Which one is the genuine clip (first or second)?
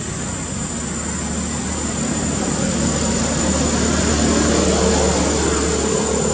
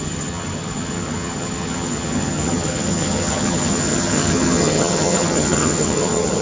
first